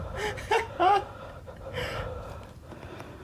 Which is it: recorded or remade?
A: remade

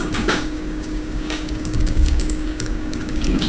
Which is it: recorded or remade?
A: remade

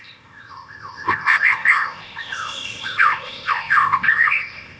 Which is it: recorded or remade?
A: remade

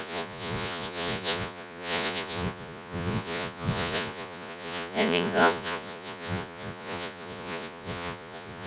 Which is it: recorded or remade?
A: remade